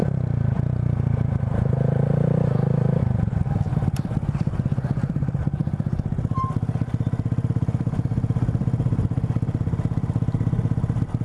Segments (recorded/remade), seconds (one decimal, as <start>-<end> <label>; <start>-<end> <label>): 0.0-11.2 remade